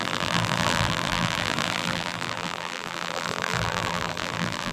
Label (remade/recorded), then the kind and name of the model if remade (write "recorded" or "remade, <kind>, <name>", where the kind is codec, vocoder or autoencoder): remade, vocoder, BigVGAN v2